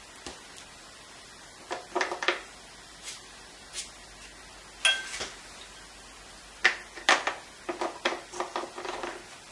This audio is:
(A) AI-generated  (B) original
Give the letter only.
B